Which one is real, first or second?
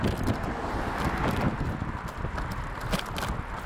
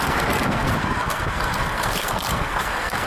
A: first